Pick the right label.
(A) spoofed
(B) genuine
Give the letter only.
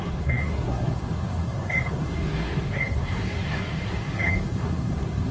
A